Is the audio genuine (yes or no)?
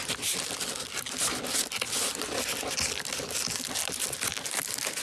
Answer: yes